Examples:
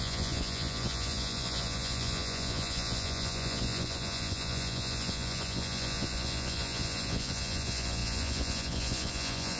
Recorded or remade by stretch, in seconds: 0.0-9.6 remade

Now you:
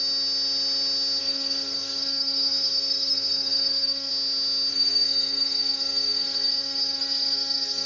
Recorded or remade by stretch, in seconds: 0.0-1.2 recorded; 1.2-4.1 remade; 4.1-4.7 recorded; 4.7-7.9 remade

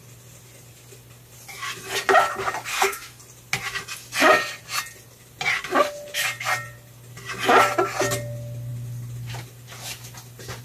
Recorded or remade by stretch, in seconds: 0.0-2.7 recorded; 2.7-3.2 remade; 3.2-10.6 recorded

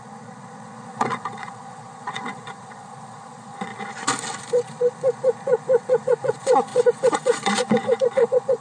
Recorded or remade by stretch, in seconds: 0.0-3.7 remade; 3.7-4.5 recorded; 4.5-8.6 remade

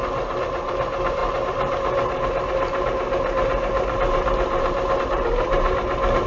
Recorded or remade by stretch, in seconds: 0.0-6.3 remade

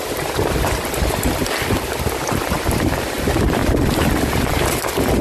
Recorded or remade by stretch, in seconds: 0.0-3.1 remade; 3.1-3.6 recorded; 3.6-4.5 remade; 4.5-5.2 recorded